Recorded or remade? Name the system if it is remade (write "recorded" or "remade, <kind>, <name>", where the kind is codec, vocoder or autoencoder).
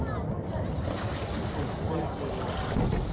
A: recorded